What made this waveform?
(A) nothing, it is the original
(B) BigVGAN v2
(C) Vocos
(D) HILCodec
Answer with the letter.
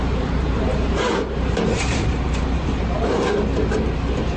B